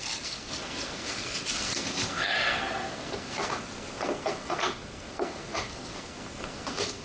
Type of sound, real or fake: fake